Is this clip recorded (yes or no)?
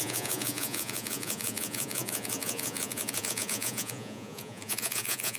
no